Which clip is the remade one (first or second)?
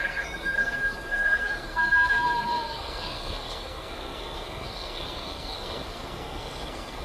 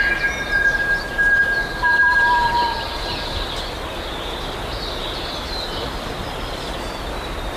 first